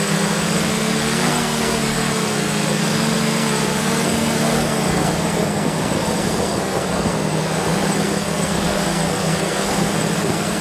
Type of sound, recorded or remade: remade